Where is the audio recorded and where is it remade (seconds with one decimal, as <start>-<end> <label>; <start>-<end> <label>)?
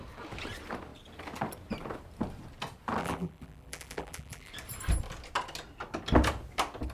0.0-3.0 recorded; 3.0-4.5 remade; 4.5-6.9 recorded